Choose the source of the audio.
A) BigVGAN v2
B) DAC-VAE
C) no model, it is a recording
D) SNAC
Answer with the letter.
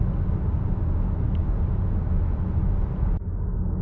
C